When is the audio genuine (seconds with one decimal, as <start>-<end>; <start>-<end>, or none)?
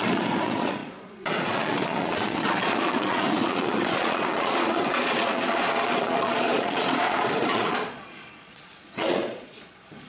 none